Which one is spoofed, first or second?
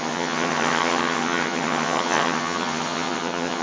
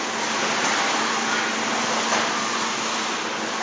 first